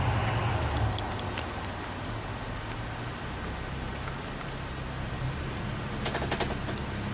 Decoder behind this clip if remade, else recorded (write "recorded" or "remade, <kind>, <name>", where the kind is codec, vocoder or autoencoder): recorded